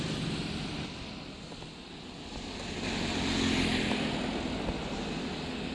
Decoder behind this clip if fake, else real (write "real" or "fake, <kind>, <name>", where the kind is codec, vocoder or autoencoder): real